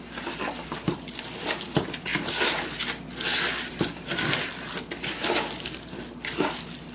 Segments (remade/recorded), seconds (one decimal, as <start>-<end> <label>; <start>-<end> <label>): 0.0-6.9 recorded